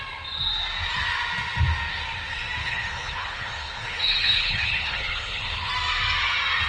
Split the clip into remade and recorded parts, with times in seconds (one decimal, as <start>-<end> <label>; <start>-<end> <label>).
0.0-2.6 recorded; 2.6-5.7 remade; 5.7-6.7 recorded